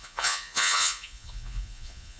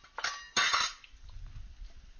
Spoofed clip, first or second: first